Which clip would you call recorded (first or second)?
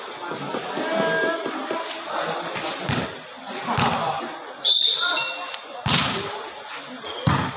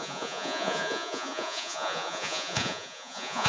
first